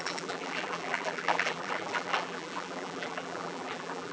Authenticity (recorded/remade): remade